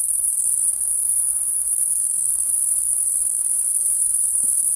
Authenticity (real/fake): fake